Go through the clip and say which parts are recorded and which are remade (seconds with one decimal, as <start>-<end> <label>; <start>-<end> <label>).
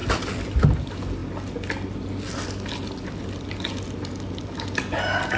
0.0-5.4 recorded